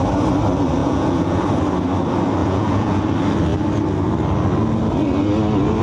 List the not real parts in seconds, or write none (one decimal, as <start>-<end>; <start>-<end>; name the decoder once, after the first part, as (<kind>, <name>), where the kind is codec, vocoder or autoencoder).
0.8-1.4 (vocoder, Vocos); 2.4-3.0